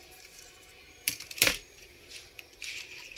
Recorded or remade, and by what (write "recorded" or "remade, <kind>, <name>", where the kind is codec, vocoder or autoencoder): remade, vocoder, BigVGAN v2